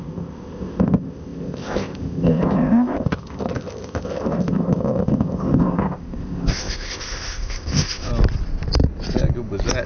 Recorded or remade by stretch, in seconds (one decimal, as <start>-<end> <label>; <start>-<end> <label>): 0.0-8.1 remade; 8.1-9.9 recorded